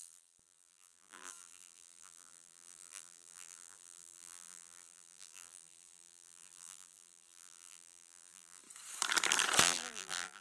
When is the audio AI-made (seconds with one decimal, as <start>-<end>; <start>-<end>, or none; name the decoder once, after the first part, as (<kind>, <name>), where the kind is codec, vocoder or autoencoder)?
0.0-8.6 (vocoder, BigVGAN v2); 9.6-10.4

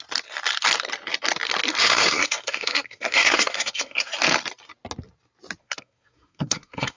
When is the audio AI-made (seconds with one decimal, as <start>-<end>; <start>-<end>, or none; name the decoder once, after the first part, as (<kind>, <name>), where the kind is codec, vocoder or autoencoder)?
1.8-4.1 (codec, SNAC); 5.6-7.0

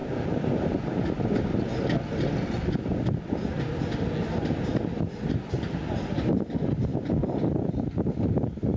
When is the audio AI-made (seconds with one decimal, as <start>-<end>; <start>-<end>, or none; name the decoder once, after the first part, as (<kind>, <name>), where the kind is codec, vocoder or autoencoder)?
none

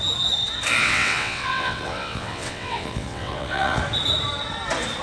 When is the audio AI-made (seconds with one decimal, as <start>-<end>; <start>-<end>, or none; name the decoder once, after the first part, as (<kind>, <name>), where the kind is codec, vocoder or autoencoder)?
0.8-3.8 (vocoder, WaveNeXt)

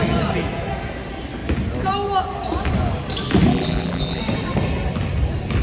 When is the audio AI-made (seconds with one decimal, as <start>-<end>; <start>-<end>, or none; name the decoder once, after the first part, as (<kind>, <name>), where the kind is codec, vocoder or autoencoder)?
3.5-4.2 (vocoder, BigVGAN v2)